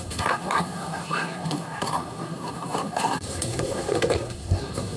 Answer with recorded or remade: remade